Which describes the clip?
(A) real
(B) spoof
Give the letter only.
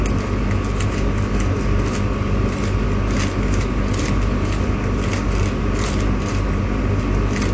A